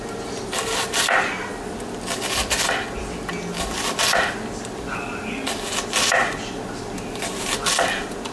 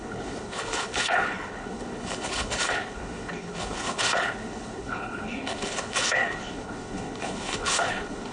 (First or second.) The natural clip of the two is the first